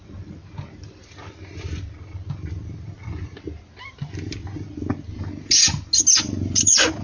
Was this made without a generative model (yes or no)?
yes